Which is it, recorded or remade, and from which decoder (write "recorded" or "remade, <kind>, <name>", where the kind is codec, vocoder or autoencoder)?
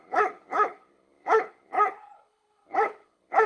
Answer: remade, codec, HILCodec